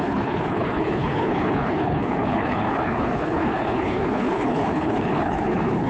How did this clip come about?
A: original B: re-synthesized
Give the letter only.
B